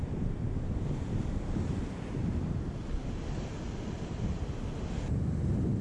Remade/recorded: recorded